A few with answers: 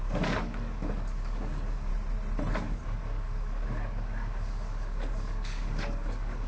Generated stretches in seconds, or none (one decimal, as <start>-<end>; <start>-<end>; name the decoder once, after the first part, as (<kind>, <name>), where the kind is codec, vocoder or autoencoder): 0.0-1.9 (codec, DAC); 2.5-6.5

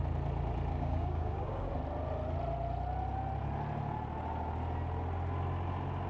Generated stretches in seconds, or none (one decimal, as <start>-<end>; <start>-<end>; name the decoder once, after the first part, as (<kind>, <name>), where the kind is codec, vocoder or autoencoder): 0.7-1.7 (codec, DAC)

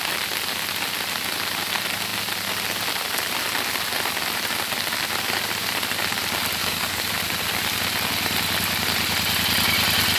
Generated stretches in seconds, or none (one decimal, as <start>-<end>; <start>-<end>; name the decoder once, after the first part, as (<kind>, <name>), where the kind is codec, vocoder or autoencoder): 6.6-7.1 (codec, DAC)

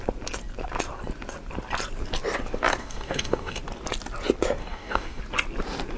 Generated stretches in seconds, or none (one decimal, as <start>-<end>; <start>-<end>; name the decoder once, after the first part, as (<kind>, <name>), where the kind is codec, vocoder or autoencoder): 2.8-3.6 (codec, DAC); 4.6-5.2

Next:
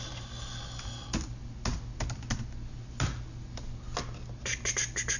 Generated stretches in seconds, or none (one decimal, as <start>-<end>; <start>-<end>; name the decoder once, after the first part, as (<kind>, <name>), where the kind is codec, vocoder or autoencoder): none

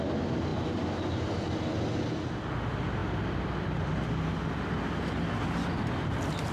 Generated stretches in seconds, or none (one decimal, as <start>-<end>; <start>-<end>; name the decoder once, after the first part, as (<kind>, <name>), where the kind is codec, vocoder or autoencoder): none

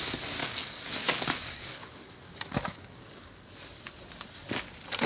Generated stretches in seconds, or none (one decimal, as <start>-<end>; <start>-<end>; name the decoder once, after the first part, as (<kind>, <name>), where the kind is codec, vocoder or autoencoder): 0.4-3.5 (codec, DAC)